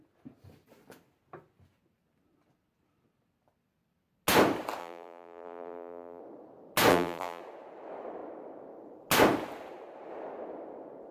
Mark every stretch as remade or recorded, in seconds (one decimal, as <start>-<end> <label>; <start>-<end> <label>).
0.0-4.8 recorded; 4.8-6.2 remade; 6.2-6.9 recorded; 6.9-7.4 remade; 7.4-11.1 recorded